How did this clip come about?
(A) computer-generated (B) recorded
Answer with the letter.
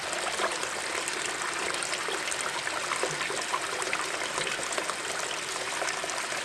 B